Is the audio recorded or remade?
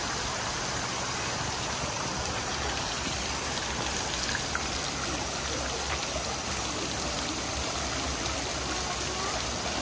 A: recorded